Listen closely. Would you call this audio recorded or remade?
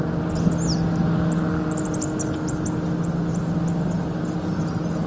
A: recorded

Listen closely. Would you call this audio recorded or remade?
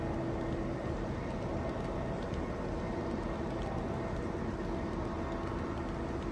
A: recorded